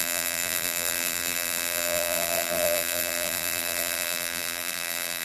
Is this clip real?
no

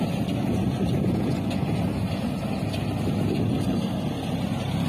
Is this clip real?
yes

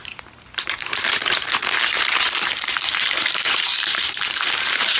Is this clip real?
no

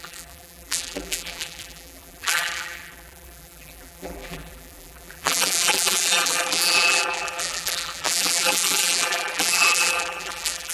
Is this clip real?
no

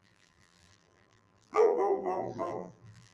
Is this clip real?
no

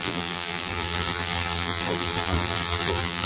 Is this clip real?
no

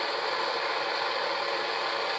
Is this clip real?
yes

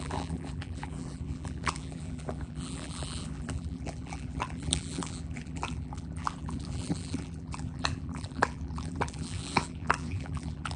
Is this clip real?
no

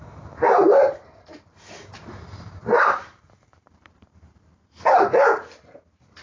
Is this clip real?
no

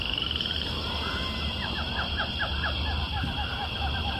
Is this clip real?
no